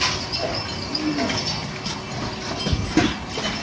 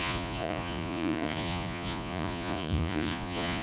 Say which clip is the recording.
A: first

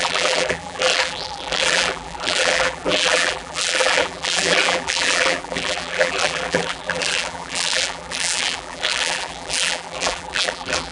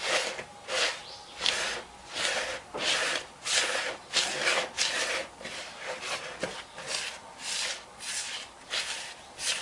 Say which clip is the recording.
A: second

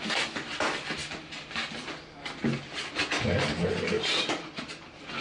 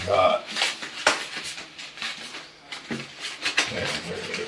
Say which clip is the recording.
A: first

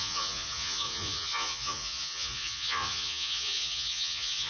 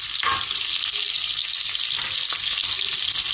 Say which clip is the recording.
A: second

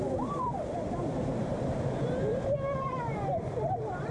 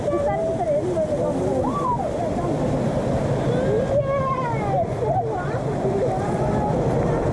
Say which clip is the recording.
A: second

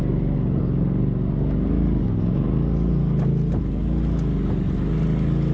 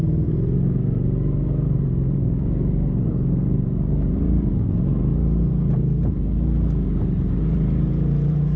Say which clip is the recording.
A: first